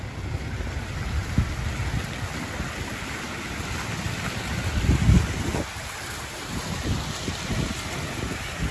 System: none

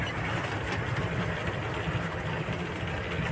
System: none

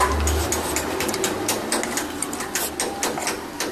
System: none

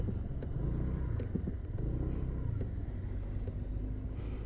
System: none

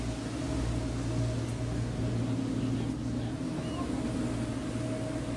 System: none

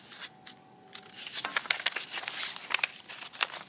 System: none